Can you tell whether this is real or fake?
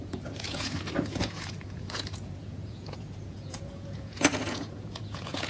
fake